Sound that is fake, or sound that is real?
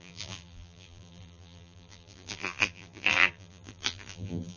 fake